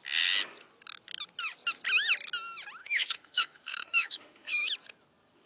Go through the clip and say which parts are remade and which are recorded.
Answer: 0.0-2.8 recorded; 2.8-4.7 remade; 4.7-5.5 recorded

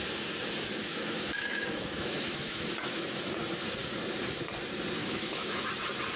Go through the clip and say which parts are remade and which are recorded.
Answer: 0.0-0.8 recorded; 0.8-3.4 remade; 3.4-5.0 recorded; 5.0-5.7 remade; 5.7-6.2 recorded